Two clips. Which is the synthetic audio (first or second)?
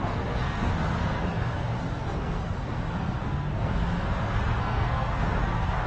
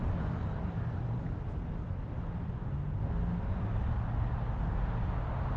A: first